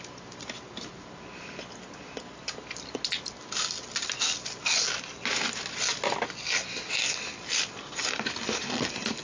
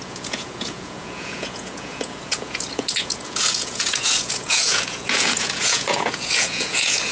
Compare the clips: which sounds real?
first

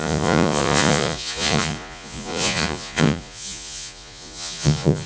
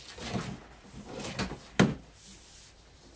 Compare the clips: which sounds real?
second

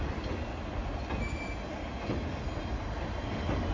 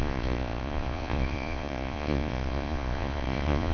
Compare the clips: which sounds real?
first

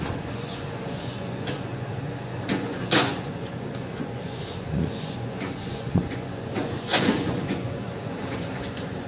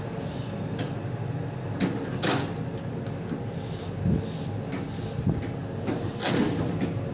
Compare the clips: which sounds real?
second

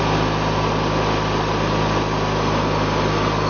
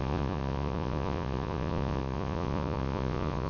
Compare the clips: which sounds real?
first